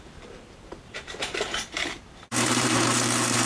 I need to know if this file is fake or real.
fake